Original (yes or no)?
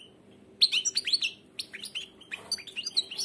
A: yes